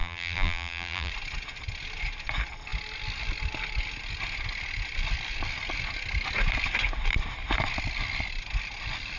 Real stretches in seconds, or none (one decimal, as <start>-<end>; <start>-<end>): 1.1-9.2